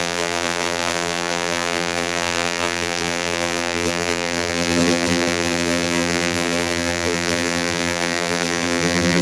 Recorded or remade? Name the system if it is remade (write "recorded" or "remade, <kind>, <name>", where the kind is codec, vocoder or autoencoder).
remade, vocoder, BigVGAN v2